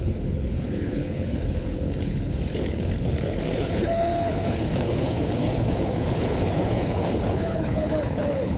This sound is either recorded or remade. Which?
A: remade